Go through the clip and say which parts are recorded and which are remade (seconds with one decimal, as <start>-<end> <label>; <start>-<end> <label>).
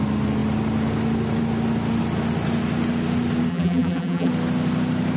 0.0-3.5 recorded; 3.5-4.3 remade; 4.3-5.2 recorded